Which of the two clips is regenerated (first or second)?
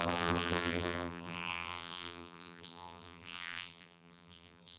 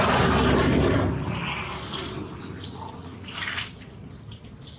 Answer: first